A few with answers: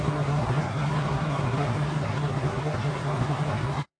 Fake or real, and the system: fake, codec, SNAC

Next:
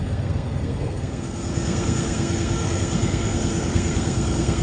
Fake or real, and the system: fake, codec, SNAC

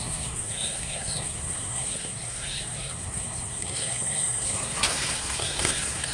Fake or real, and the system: fake, codec, SNAC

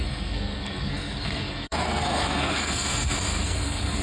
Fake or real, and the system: fake, codec, SNAC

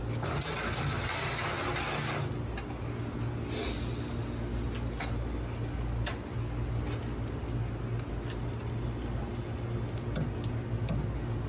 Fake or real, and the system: real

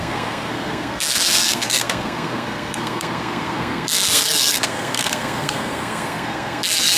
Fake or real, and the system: fake, codec, SNAC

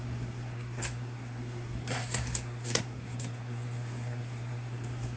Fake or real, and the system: fake, codec, SNAC